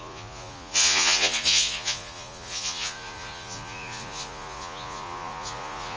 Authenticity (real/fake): fake